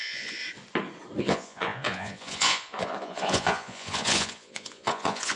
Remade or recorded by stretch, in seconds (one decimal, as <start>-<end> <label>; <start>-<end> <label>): 0.0-0.4 remade; 0.4-1.2 recorded; 1.2-5.4 remade